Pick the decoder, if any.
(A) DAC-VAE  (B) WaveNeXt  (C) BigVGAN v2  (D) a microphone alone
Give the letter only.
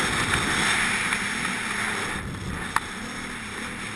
D